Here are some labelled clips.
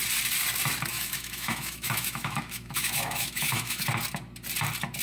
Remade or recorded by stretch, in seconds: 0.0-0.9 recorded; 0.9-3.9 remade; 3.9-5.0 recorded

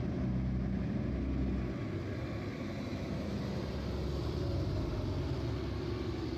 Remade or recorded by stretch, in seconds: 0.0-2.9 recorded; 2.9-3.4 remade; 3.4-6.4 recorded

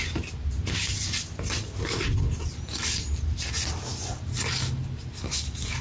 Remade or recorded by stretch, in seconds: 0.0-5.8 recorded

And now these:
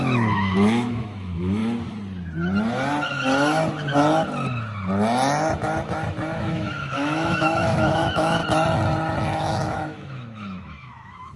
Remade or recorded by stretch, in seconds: 0.0-1.6 remade; 1.6-6.4 recorded; 6.4-8.4 remade; 8.4-9.4 recorded; 9.4-11.4 remade